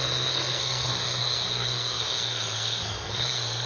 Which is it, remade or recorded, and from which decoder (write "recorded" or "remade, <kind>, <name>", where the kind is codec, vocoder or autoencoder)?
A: remade, codec, SNAC